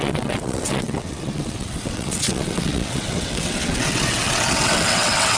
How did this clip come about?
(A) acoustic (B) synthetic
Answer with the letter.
B